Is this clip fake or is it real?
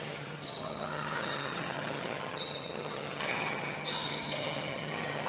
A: fake